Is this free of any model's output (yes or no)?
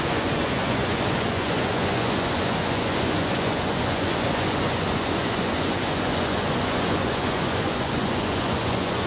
no